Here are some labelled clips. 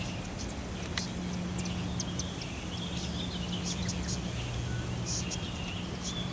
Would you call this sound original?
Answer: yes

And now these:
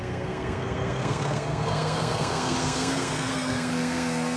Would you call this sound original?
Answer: no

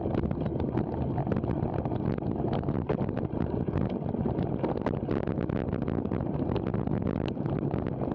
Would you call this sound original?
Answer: yes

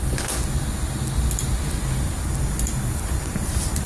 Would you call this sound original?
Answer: yes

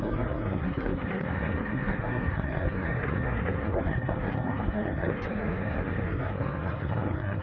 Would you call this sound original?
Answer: no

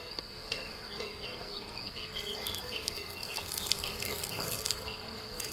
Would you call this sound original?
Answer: no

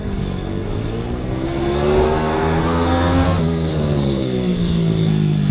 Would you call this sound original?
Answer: no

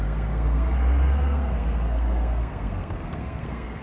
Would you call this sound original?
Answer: no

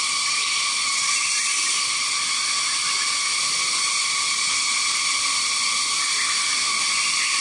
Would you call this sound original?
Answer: yes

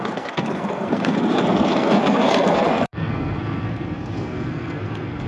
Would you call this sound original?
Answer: no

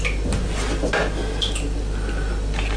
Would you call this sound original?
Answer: yes